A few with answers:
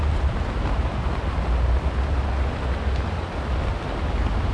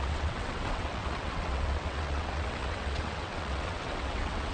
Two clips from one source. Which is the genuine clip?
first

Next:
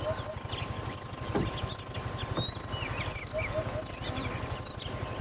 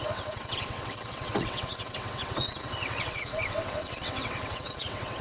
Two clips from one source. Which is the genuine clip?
first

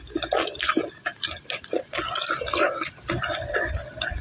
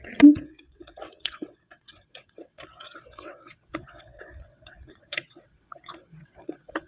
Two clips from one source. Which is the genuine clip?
first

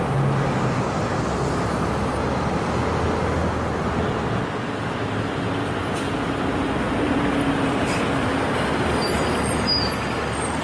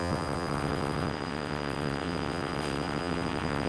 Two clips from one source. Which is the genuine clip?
first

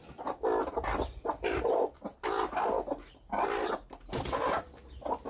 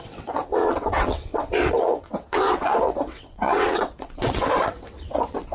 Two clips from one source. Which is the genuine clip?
first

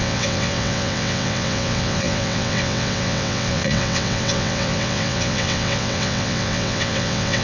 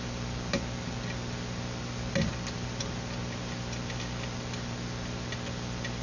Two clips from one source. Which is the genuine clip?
second